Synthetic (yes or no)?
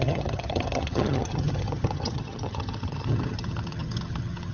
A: yes